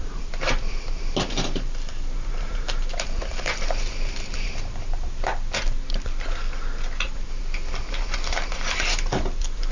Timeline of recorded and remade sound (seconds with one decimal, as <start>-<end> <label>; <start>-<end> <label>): 0.0-5.3 remade; 5.3-7.0 recorded; 7.0-9.7 remade